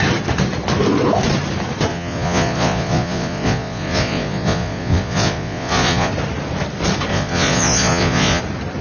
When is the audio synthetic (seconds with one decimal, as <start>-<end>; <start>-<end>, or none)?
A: 1.9-6.1; 7.1-8.4